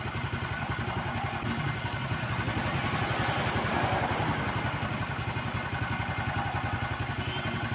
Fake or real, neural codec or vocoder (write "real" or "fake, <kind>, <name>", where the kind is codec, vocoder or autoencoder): real